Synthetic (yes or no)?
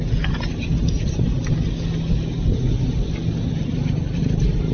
no